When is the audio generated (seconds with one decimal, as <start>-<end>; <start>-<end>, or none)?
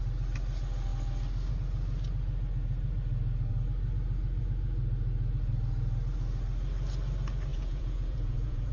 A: 7.5-8.7